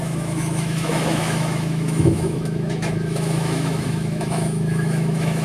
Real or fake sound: fake